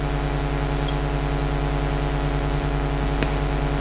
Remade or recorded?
recorded